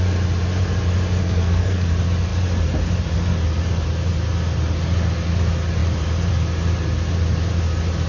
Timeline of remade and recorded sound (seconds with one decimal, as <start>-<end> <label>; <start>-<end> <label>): 0.0-1.2 recorded; 1.2-1.9 remade; 1.9-8.1 recorded

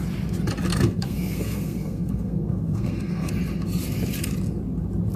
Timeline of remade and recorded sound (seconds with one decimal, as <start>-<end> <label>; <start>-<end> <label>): 0.0-0.7 recorded; 0.7-3.3 remade; 3.3-5.2 recorded

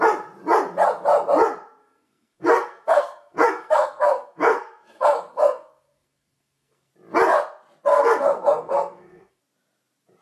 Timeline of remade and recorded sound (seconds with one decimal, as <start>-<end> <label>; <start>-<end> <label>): 0.0-1.8 recorded; 1.8-6.9 remade; 6.9-7.9 recorded; 7.9-9.4 remade; 9.4-10.2 recorded

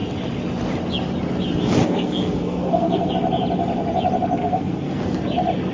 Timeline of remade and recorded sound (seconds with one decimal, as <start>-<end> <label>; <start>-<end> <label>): 0.0-1.8 recorded; 1.8-3.1 remade; 3.1-4.4 recorded; 4.4-5.0 remade; 5.0-5.7 recorded

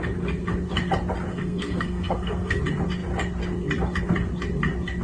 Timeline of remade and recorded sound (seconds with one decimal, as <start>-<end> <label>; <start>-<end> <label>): 0.0-1.3 recorded; 1.3-2.6 remade; 2.6-5.0 recorded

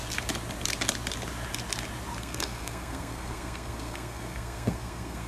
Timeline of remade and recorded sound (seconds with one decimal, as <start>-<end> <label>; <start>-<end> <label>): 0.0-2.2 recorded; 2.2-5.3 remade

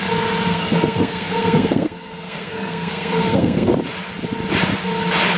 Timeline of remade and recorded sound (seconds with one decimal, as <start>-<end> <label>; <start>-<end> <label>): 0.0-0.5 recorded; 0.5-3.7 remade; 3.7-5.4 recorded

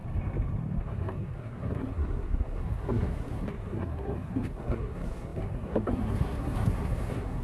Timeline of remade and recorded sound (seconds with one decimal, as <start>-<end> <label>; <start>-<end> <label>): 0.0-0.8 recorded; 0.8-7.4 remade